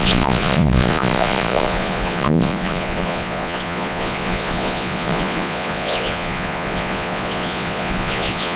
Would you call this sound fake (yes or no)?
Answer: yes